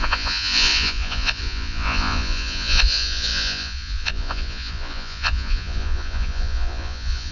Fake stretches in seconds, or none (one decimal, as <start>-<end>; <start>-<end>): 0.0-7.3